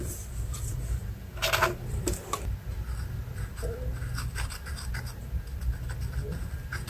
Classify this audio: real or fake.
real